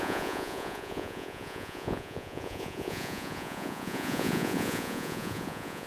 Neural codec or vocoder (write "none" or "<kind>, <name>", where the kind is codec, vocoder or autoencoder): vocoder, Vocos